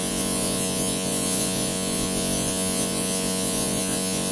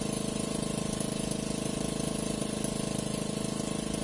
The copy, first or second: first